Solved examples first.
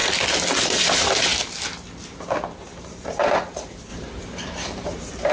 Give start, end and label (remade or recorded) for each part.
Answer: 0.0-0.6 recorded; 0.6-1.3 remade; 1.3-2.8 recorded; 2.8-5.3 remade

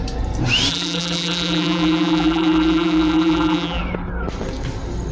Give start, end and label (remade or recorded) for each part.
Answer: 0.0-0.7 recorded; 0.7-3.8 remade; 3.8-5.1 recorded

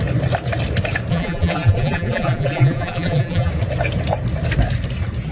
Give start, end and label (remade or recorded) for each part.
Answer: 0.0-1.1 recorded; 1.1-3.5 remade; 3.5-5.3 recorded